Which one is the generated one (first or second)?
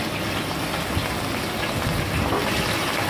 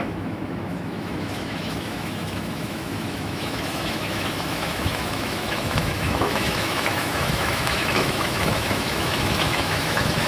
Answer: second